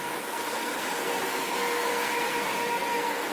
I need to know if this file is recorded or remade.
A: remade